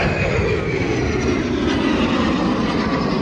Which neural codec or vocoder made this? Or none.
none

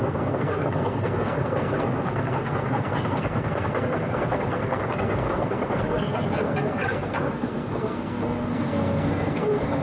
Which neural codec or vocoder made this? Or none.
codec, SNAC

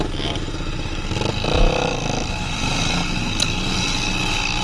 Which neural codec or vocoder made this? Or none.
none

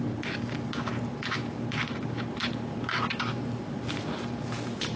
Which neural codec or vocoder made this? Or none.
none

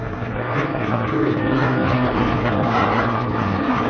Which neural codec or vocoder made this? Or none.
codec, SNAC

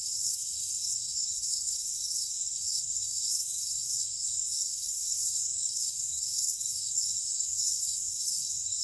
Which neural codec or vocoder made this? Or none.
codec, SNAC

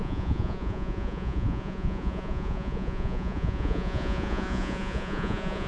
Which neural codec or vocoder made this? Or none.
vocoder, Vocos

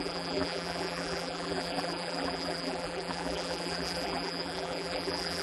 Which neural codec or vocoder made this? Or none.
vocoder, BigVGAN v2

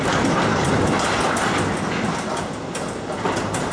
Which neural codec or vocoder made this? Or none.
none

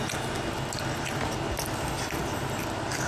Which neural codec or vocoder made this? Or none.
none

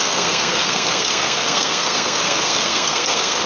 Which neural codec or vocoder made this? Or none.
codec, SNAC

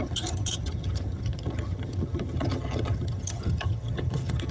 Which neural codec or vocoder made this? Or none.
vocoder, HiFi-GAN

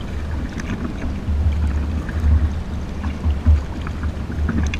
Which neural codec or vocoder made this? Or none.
none